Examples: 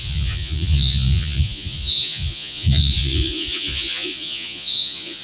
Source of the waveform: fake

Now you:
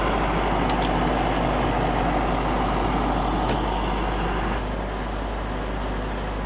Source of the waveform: real